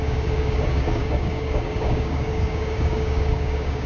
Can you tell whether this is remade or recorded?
remade